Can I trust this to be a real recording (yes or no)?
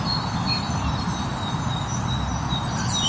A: yes